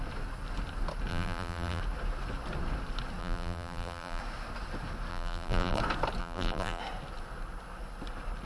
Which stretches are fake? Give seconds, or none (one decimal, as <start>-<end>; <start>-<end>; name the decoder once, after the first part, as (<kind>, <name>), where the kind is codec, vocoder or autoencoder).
1.1-1.8 (vocoder, BigVGAN v2); 3.2-4.2; 5.1-5.8; 6.2-6.8